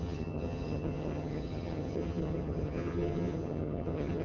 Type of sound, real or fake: fake